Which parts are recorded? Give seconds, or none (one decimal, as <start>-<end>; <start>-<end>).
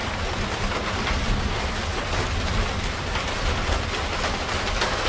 0.0-5.1